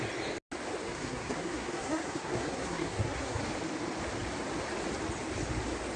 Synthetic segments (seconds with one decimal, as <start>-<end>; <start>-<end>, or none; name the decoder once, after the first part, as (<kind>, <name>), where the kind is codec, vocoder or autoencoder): 0.9-3.4 (codec, SNAC)